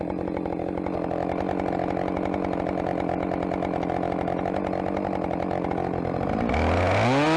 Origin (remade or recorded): recorded